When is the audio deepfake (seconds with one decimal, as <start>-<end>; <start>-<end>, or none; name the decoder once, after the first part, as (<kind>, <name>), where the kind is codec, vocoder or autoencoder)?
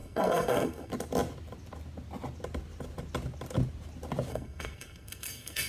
0.0-0.9 (codec, SNAC); 4.3-5.7